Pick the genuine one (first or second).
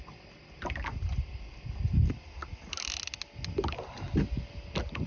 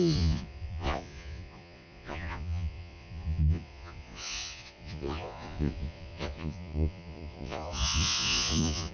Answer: first